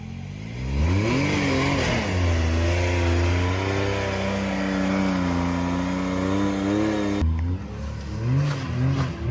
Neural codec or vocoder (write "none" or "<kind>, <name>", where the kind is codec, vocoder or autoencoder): none